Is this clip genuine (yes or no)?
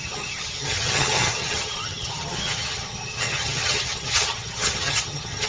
no